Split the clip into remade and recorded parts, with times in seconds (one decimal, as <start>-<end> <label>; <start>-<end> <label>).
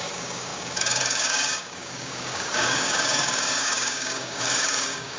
0.0-5.2 remade